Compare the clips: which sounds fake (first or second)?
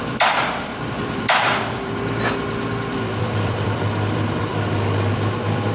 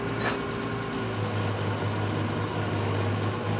first